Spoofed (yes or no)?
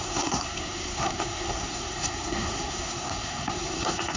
yes